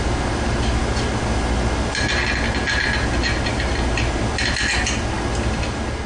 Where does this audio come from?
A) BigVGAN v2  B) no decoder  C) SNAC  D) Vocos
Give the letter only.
B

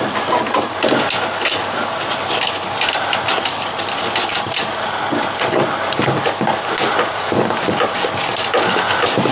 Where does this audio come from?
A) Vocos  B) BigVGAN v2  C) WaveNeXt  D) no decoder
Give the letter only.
D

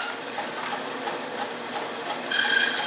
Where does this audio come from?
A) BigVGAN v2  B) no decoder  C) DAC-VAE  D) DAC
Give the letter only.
B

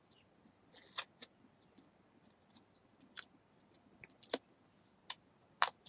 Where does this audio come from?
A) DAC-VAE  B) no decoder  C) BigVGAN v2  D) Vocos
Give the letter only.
C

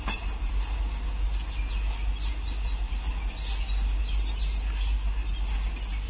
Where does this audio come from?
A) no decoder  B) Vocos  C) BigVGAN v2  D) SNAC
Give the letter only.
A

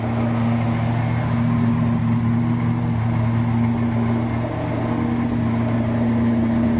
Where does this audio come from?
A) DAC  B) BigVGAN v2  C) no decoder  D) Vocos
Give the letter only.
C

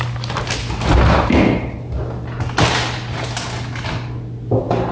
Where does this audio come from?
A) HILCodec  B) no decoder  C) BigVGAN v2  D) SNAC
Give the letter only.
B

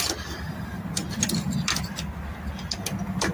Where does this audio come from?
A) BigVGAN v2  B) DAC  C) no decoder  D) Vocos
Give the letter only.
C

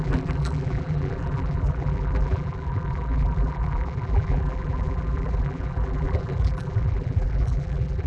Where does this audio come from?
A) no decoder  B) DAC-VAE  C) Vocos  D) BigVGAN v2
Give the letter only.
D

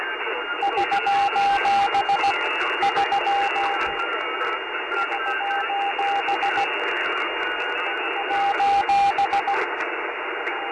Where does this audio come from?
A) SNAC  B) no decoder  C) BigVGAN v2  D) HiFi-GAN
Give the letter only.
B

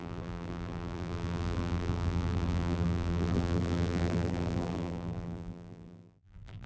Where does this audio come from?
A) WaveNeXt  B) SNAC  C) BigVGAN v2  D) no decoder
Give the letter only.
C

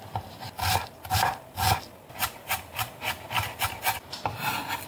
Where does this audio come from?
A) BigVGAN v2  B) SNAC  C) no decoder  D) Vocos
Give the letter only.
C